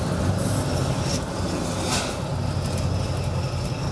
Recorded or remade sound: recorded